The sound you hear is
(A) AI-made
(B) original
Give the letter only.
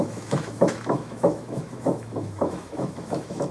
A